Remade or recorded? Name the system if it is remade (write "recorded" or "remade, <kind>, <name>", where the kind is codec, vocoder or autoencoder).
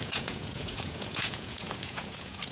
remade, vocoder, Vocos